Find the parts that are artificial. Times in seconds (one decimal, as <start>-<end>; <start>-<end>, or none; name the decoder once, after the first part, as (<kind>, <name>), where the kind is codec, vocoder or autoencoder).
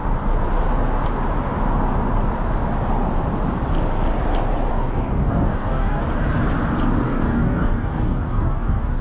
4.7-6.0 (codec, DAC); 7.0-9.0